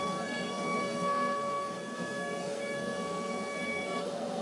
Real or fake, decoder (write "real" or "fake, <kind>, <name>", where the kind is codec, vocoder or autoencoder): fake, codec, SNAC